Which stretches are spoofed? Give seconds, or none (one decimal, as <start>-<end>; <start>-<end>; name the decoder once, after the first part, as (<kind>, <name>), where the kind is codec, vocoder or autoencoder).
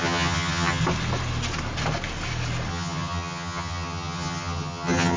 0.0-0.8 (vocoder, HiFi-GAN); 2.7-5.2